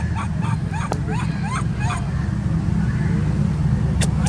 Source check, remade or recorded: recorded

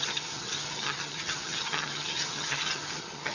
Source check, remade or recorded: remade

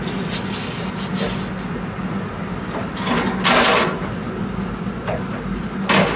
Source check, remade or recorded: recorded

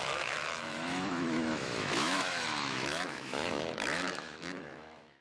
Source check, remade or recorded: remade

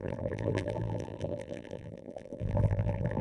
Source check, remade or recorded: remade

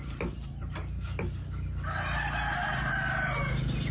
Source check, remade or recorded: recorded